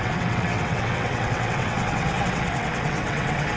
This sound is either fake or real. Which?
fake